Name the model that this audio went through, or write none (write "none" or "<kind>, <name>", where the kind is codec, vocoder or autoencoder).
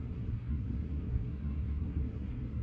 codec, SNAC